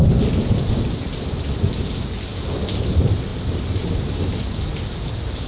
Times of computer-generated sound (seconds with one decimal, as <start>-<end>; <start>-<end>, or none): 0.0-2.3; 2.8-5.5